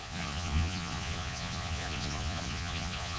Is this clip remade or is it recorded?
remade